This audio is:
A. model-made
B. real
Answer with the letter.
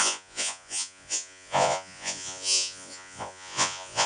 A